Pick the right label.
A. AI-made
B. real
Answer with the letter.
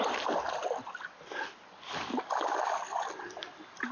B